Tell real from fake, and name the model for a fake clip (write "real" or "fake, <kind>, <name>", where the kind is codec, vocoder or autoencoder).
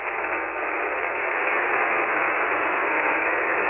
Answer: fake, codec, SNAC